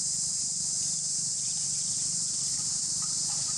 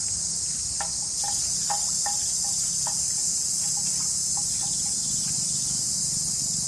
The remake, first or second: first